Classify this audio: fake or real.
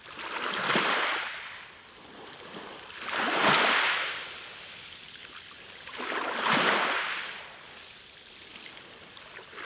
real